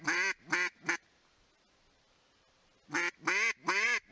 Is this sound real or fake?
real